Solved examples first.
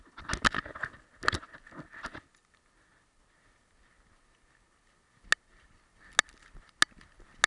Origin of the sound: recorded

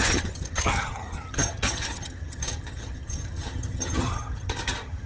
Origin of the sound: remade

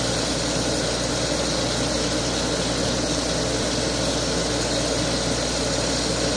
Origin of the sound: recorded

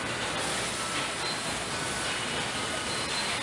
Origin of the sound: recorded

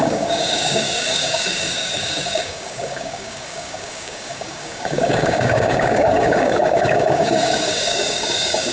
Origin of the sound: remade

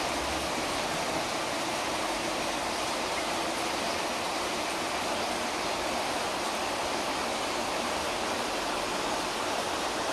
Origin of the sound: recorded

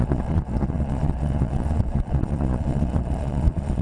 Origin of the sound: remade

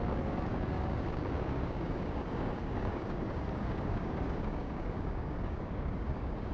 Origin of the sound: remade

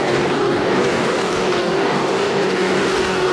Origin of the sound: remade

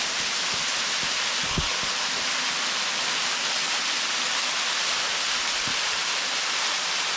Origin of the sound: recorded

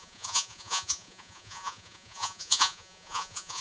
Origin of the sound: remade